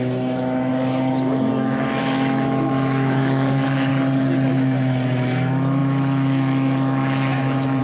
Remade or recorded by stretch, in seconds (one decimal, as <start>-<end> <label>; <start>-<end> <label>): 0.0-0.7 remade; 0.7-1.5 recorded; 1.5-3.9 remade; 3.9-4.5 recorded; 4.5-7.8 remade